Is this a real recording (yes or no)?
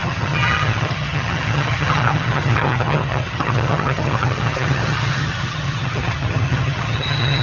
no